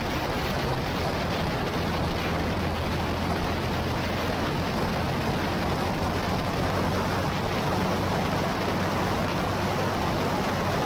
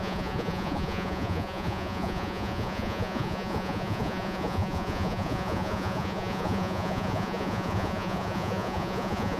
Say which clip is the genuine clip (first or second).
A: first